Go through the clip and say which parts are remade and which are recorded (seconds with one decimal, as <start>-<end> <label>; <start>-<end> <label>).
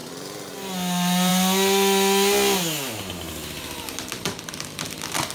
0.0-0.5 remade; 0.5-5.3 recorded